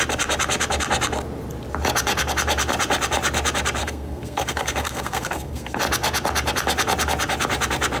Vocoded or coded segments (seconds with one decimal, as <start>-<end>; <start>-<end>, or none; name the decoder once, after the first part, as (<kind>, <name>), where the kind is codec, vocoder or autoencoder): 3.8-5.8 (codec, SNAC)